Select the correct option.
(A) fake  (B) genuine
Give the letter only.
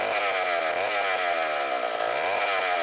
B